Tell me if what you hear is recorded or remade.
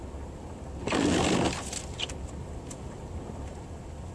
recorded